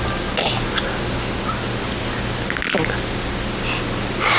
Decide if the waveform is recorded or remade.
recorded